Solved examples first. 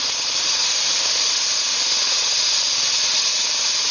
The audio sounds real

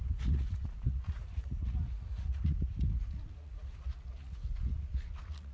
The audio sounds fake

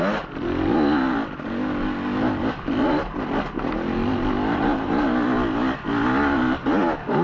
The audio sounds real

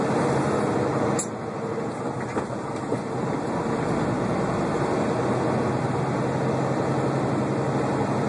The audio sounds real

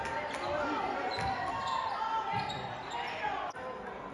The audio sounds real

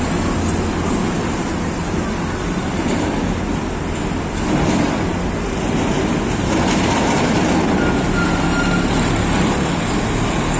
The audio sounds real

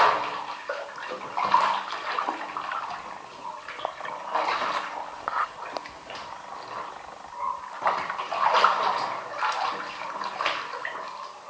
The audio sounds real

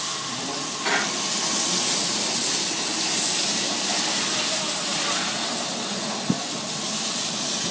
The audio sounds real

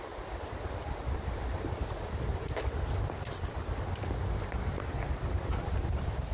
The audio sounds real